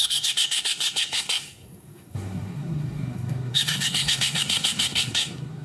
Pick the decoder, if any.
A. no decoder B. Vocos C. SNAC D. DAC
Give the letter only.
C